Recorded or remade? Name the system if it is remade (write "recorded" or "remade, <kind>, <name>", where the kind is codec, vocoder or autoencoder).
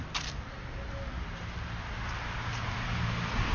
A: recorded